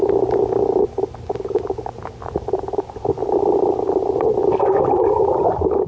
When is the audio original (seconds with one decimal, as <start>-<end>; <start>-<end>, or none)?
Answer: 0.0-5.9